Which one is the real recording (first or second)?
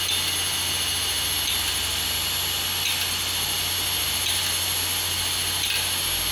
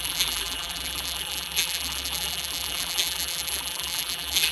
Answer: first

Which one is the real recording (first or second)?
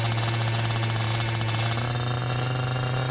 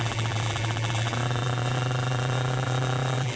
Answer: first